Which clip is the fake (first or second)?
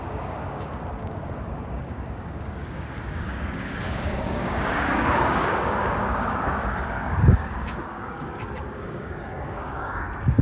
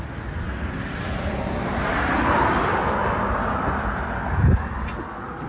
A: first